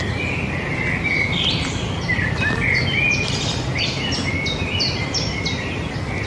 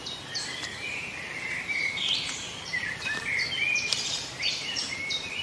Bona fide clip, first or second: first